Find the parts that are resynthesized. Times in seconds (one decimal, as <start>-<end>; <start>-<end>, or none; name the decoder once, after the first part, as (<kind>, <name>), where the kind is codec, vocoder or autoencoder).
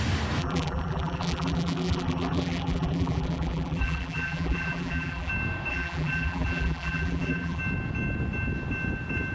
0.4-5.3 (vocoder, BigVGAN v2); 5.7-7.6